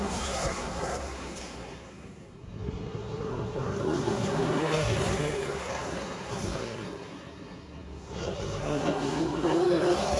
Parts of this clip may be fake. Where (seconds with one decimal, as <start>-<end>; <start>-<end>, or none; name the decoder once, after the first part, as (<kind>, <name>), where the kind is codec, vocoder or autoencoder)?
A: 0.0-10.2 (codec, SNAC)